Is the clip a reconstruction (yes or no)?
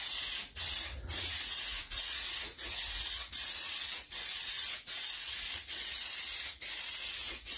yes